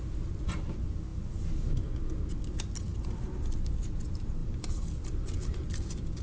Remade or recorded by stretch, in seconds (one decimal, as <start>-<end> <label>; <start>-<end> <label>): 0.0-4.4 recorded; 4.4-6.2 remade